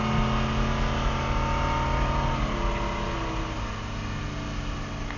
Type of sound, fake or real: real